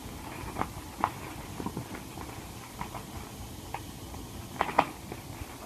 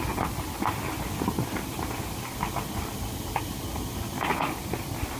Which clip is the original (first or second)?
second